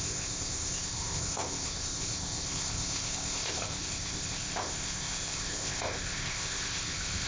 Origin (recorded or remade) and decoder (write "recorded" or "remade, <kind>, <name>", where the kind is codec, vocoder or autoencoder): remade, codec, ZipCodec